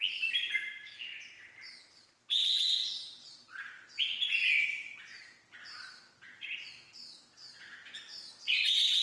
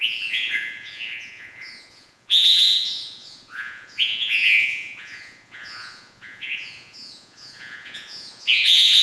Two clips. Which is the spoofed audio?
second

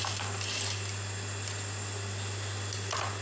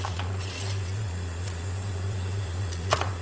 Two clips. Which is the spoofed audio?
second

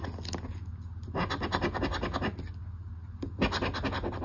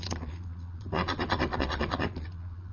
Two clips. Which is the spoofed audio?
second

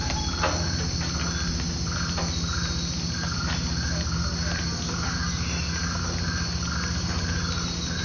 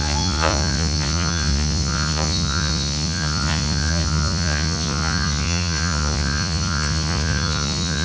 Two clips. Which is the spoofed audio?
second